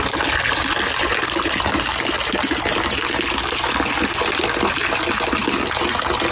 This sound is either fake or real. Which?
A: real